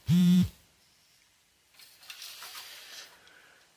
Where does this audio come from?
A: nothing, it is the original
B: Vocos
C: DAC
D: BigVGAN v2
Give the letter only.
D